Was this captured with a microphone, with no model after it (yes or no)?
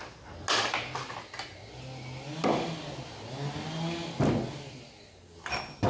yes